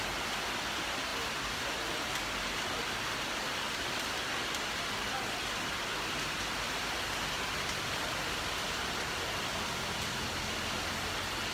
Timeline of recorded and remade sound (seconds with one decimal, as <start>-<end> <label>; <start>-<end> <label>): 0.0-11.5 recorded